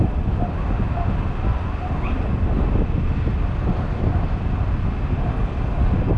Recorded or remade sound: recorded